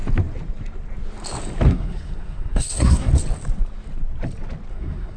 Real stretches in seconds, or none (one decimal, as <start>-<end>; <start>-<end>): 0.0-1.7; 3.1-4.7